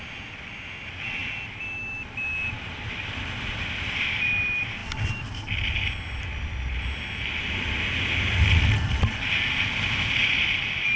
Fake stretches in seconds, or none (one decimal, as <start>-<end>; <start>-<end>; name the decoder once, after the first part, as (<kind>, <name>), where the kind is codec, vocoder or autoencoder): none

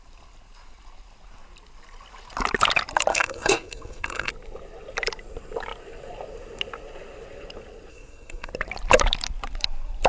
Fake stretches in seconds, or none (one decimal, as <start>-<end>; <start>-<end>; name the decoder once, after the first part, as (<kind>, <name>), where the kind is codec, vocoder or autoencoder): 3.1-4.3 (codec, SNAC); 7.9-8.5

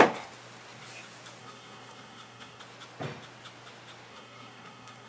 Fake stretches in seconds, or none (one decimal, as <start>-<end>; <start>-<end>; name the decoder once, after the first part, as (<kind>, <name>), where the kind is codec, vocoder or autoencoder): 1.4-2.6 (codec, SNAC); 4.1-5.1

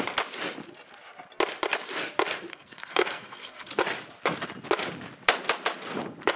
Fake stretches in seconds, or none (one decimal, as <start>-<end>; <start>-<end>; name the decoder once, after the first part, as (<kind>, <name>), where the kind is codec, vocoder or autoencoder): 2.5-3.7 (codec, SNAC)

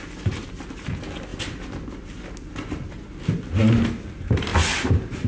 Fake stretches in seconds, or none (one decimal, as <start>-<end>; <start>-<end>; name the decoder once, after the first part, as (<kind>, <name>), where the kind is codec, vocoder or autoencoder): none

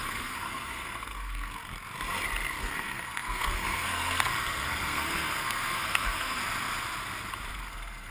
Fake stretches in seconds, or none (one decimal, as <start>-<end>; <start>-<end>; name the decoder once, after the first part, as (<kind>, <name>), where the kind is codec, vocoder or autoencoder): 0.0-1.7 (codec, SNAC); 2.6-6.4; 7.5-8.1

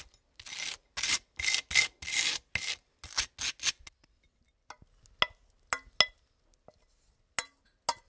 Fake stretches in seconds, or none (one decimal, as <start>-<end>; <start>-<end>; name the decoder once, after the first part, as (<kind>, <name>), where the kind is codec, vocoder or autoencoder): none

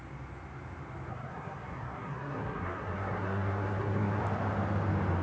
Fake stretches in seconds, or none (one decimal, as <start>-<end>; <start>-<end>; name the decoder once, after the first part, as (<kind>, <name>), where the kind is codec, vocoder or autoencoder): 1.1-4.2 (codec, SNAC)